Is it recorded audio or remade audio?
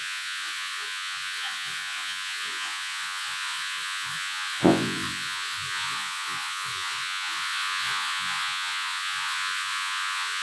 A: remade